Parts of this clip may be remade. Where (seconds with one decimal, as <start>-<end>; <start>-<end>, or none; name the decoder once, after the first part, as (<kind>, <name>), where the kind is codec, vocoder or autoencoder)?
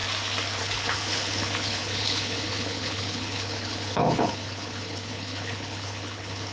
0.6-6.5 (codec, HILCodec)